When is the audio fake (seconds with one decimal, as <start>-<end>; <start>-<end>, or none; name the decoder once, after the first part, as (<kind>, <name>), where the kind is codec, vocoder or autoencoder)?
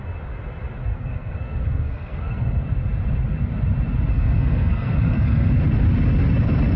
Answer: 0.9-2.6 (codec, SNAC); 4.1-5.5